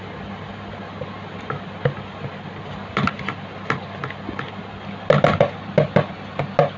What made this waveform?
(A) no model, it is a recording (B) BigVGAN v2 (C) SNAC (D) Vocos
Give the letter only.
A